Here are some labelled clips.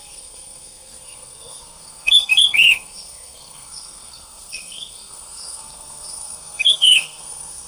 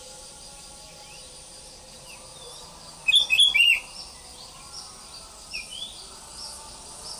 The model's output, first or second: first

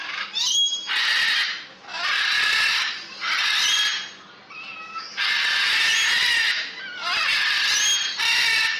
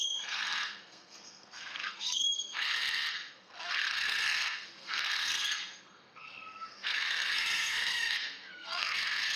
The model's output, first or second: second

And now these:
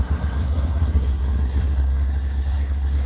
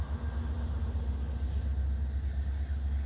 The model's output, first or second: first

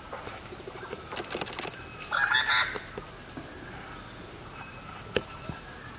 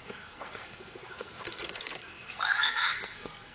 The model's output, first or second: second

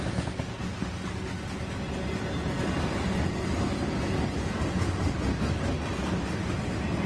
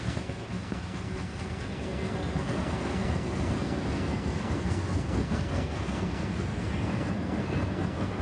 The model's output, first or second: second